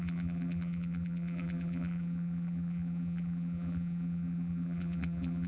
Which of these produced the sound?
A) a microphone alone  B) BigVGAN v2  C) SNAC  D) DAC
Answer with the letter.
B